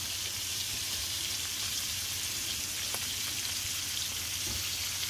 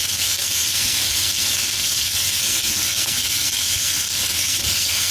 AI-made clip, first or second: second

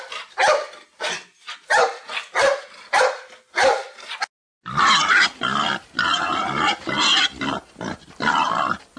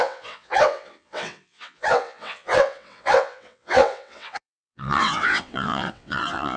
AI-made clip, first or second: second